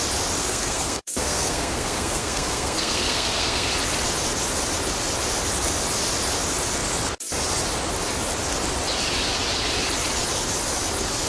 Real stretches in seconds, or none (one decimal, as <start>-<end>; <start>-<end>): 0.0-0.4; 3.7-11.3